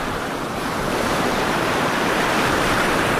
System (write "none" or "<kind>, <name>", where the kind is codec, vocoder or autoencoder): vocoder, BigVGAN v2